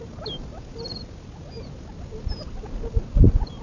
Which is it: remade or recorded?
recorded